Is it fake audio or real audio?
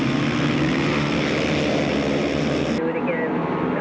real